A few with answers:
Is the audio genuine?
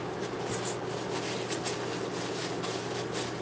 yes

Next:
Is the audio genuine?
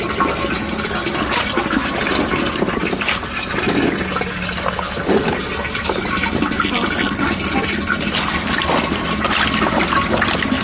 yes